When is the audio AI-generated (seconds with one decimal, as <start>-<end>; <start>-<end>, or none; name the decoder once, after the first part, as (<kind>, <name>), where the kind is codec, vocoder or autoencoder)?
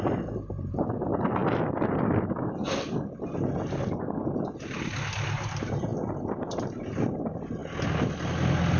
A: none